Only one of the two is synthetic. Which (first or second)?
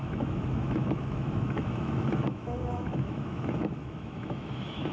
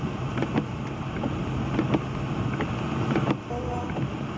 first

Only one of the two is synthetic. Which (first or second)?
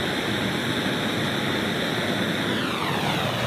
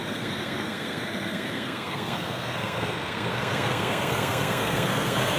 second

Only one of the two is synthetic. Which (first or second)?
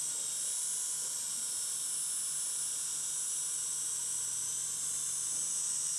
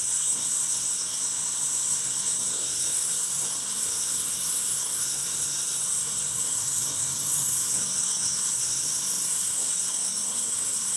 second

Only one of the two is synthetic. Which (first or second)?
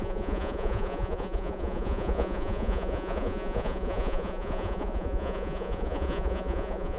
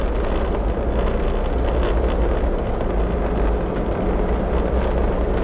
first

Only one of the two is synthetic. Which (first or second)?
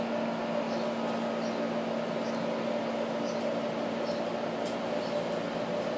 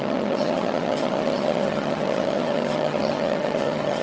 second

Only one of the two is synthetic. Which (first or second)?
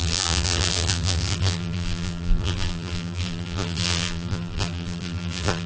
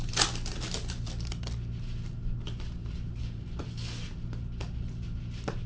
first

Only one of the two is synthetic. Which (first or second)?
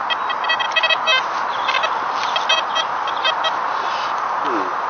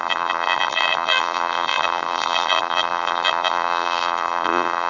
second